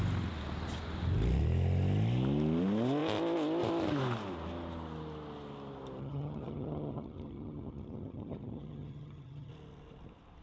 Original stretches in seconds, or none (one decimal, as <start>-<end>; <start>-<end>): 0.0-6.0; 9.5-10.4